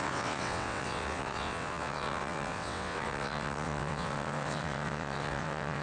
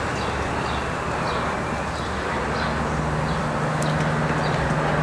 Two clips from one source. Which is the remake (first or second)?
first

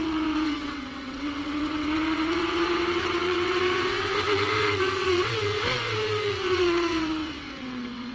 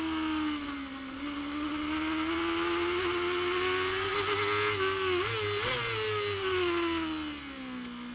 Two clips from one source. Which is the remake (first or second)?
first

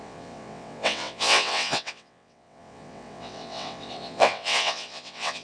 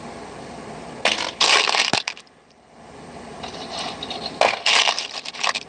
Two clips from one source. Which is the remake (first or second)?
first